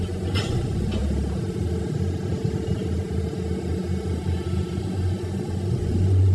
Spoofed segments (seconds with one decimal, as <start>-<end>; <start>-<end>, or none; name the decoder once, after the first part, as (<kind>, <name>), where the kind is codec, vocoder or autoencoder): 0.0-1.0 (vocoder, Vocos); 4.8-6.3